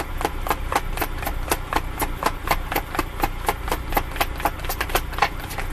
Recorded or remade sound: recorded